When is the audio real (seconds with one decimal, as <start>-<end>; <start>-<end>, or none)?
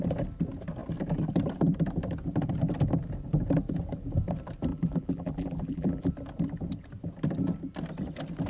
0.0-4.7; 6.1-8.5